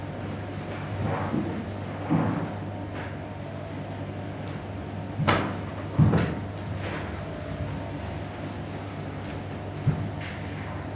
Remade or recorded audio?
recorded